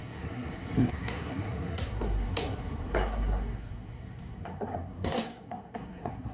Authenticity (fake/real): fake